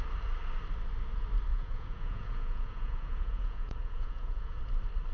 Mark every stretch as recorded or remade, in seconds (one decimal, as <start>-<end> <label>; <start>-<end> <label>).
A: 0.0-1.5 recorded; 1.5-4.6 remade; 4.6-5.1 recorded